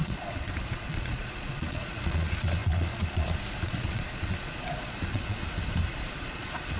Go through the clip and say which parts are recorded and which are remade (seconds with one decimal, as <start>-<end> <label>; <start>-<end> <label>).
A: 0.0-5.4 remade; 5.4-6.1 recorded; 6.1-6.8 remade